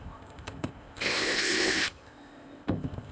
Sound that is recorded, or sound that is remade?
remade